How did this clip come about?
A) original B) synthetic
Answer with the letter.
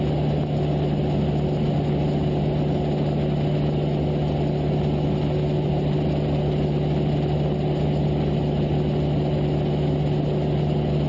A